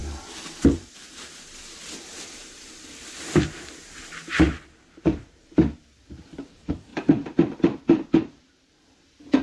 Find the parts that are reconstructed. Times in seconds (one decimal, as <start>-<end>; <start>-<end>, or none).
2.3-9.4